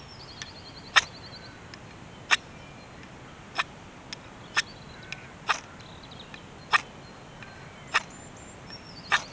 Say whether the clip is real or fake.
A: real